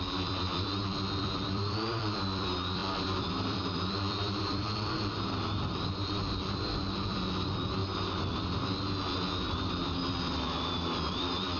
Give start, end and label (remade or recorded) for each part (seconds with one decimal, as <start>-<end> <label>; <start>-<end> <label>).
0.0-7.8 remade; 7.8-9.5 recorded; 9.5-11.6 remade